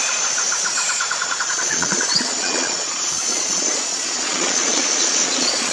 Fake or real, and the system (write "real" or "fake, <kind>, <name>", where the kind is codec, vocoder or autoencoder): fake, vocoder, Vocos